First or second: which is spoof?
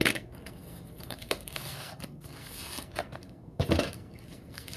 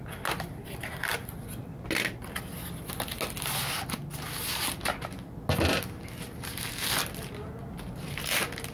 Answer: first